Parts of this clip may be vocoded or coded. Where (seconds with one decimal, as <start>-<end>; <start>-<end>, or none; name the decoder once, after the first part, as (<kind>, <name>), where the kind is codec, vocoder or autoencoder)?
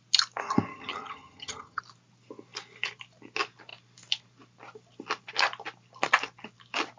0.7-1.8 (vocoder, HiFi-GAN)